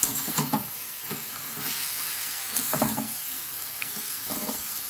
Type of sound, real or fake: fake